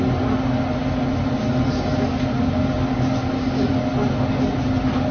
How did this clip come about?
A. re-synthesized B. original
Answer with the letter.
B